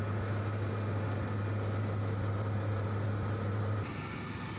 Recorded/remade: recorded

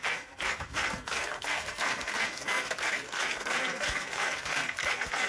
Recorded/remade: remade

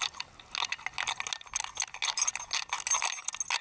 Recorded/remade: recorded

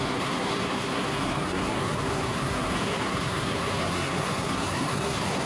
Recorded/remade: remade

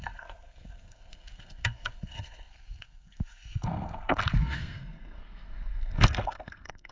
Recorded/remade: remade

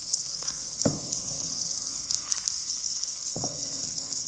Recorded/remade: remade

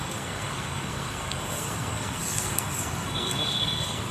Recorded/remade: remade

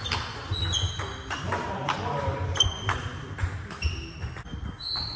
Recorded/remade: recorded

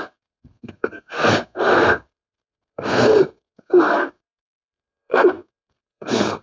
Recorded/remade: remade